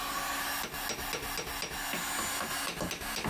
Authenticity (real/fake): real